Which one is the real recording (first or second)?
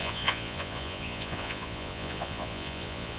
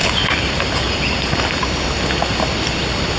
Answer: second